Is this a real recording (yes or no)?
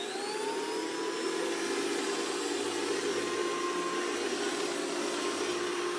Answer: yes